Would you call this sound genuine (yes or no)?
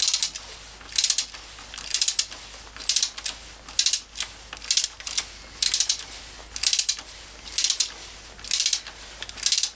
yes